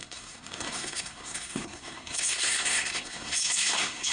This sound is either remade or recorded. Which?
remade